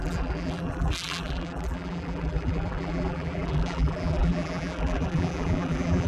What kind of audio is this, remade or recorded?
remade